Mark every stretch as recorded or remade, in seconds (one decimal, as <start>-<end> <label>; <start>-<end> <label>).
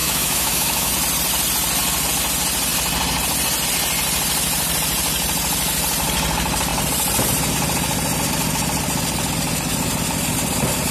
0.0-0.9 remade; 0.9-10.9 recorded